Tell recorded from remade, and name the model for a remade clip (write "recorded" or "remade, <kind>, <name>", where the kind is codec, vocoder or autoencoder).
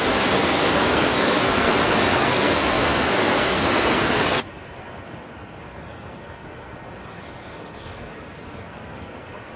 remade, codec, SNAC